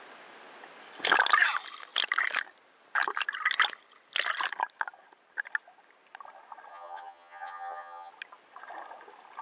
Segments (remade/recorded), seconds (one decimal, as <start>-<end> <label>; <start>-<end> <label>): 0.0-6.7 recorded; 6.7-8.1 remade; 8.1-9.4 recorded